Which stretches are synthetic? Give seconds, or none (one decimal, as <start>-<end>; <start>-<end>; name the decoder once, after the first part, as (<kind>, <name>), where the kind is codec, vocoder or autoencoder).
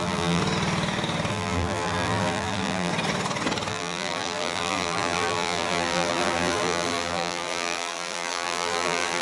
0.0-0.4 (vocoder, BigVGAN v2); 1.3-2.9; 3.7-9.2